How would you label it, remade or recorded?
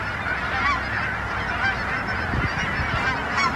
recorded